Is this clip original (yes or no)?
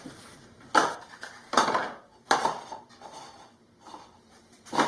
no